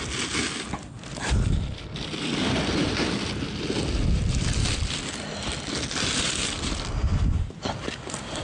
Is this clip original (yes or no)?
yes